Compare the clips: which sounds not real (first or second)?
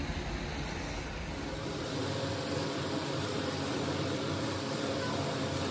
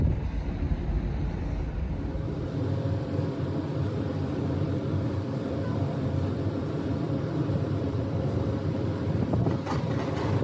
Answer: second